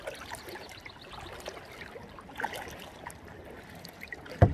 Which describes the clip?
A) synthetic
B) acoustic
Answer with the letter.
B